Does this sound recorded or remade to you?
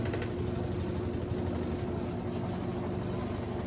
recorded